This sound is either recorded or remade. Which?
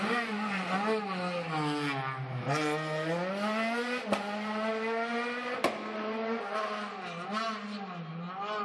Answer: recorded